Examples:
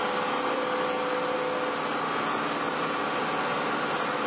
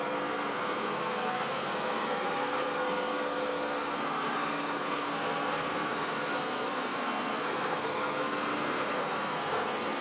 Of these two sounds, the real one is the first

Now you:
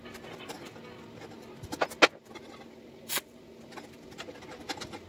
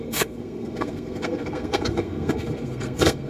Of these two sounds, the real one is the first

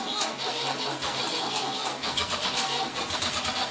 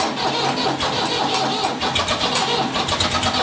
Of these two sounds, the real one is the second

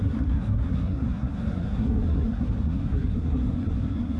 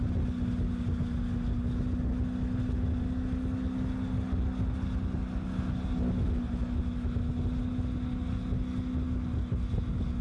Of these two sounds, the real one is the second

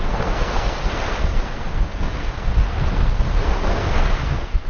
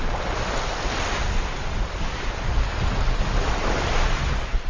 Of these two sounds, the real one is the second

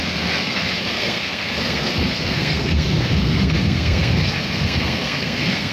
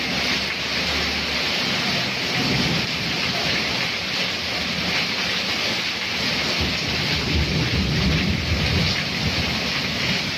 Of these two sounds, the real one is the second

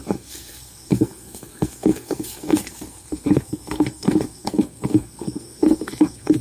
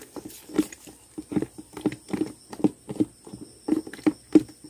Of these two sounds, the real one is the second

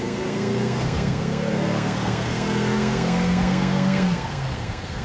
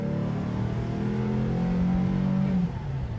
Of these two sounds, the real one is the second